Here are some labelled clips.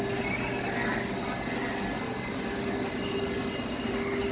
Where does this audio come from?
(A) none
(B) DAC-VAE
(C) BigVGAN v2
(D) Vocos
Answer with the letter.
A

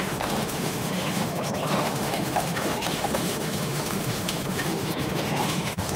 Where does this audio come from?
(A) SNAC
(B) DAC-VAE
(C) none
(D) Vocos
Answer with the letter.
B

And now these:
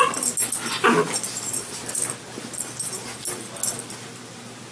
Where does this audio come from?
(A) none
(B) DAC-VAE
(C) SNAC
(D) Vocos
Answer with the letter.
A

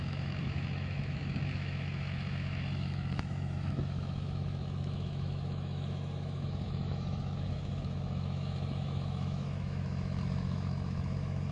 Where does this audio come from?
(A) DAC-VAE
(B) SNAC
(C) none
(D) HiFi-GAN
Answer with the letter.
A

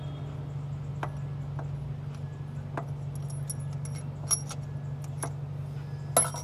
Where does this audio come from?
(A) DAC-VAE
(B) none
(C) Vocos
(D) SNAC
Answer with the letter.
B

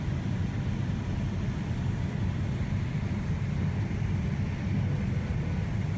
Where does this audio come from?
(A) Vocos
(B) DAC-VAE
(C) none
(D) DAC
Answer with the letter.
C